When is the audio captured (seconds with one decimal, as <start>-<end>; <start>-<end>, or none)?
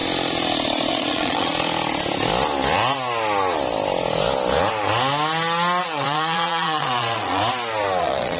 0.0-0.9; 1.5-5.8; 7.4-8.0